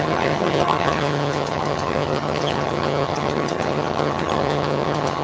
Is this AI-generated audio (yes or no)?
yes